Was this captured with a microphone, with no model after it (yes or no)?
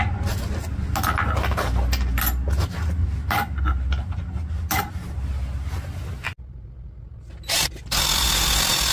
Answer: yes